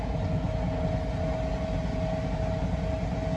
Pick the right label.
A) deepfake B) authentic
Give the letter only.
B